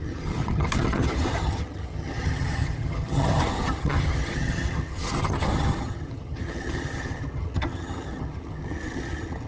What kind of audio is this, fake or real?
fake